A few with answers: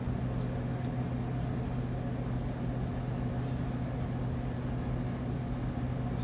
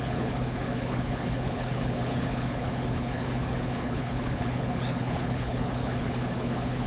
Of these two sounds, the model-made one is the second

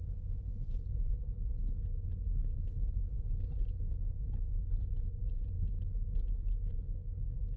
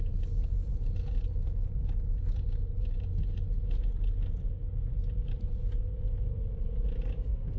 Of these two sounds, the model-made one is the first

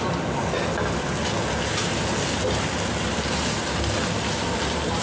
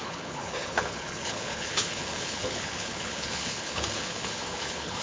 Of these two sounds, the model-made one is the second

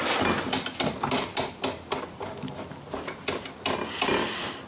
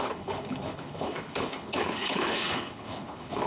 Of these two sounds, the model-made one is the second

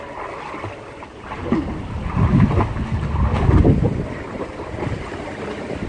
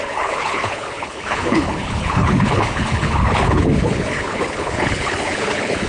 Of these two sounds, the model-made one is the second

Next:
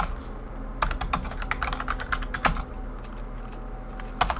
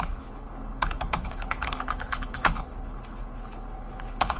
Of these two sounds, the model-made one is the second